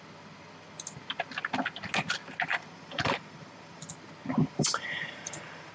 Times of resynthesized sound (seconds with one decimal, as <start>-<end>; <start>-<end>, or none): 2.5-3.9; 4.4-5.7